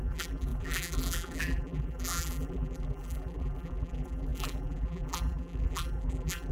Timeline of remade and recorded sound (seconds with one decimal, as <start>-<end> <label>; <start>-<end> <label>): 0.0-6.5 remade